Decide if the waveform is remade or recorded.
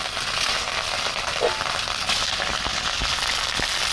recorded